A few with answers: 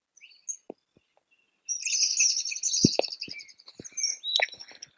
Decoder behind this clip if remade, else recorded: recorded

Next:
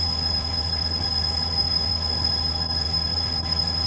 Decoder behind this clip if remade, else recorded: remade, codec, HILCodec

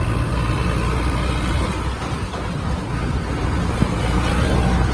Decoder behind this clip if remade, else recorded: recorded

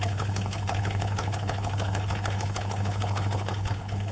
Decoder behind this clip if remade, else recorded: remade, codec, HILCodec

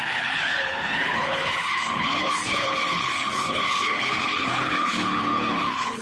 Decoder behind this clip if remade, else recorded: remade, codec, HILCodec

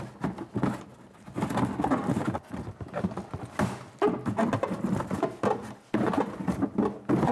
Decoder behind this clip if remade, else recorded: recorded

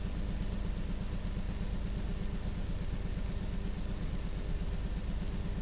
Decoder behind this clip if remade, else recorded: recorded